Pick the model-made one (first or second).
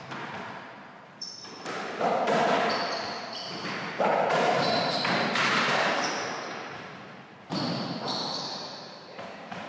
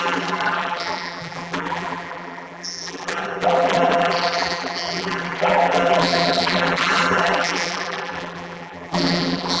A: second